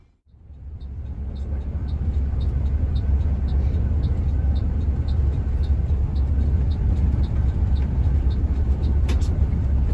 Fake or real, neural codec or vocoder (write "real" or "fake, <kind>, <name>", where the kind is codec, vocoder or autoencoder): fake, vocoder, BigVGAN v2